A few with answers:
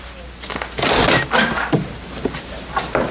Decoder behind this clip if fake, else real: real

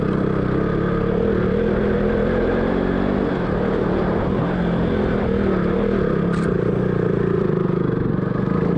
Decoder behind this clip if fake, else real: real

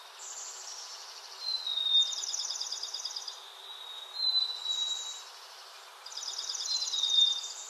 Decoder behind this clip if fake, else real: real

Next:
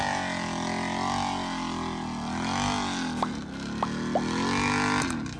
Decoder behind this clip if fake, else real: real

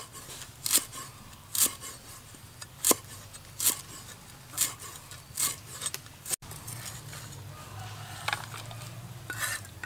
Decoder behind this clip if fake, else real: real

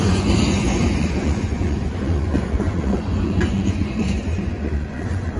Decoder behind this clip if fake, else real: fake, vocoder, Vocos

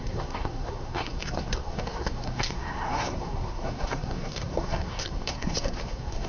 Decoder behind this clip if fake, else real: fake, codec, SNAC